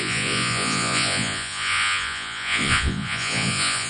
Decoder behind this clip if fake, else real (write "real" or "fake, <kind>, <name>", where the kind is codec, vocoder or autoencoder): fake, vocoder, Vocos